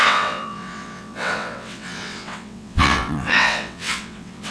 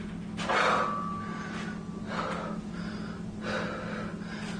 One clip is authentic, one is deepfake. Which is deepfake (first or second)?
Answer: first